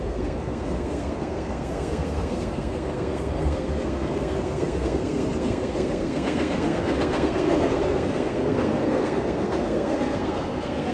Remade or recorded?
remade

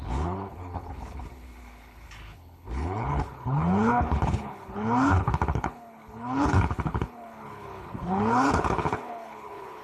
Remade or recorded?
remade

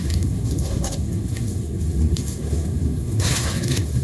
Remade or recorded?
remade